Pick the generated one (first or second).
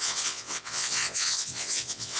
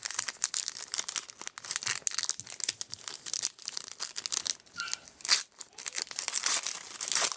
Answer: first